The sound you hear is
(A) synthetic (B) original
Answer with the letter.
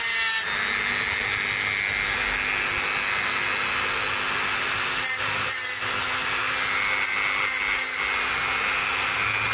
B